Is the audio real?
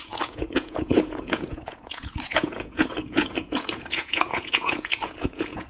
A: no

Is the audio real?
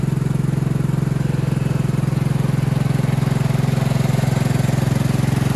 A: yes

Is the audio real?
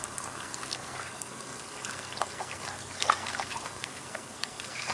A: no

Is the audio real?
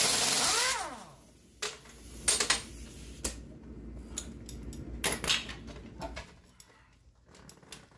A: yes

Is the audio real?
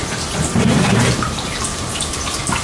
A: no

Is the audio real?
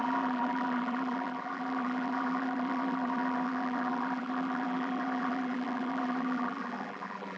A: no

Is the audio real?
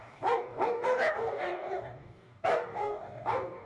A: no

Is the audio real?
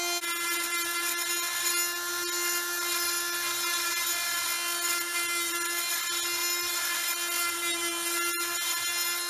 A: yes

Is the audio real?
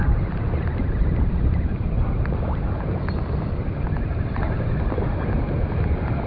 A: yes